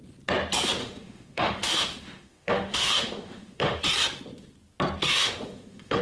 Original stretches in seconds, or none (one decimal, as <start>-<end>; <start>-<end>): 0.0-0.8; 3.8-5.1